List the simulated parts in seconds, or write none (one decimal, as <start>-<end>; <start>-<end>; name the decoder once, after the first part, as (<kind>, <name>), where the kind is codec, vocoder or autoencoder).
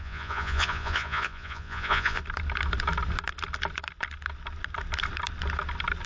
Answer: 0.0-2.2 (vocoder, Vocos)